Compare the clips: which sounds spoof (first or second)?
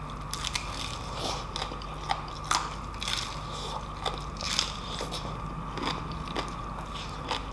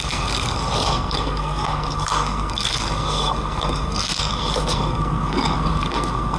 second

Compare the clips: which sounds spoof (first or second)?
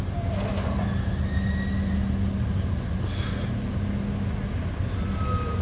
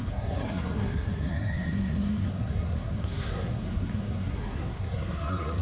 second